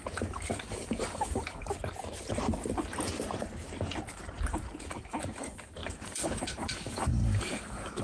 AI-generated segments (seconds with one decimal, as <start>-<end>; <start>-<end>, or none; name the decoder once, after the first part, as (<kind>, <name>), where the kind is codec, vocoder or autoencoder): 0.0-1.6 (codec, DAC); 4.8-8.0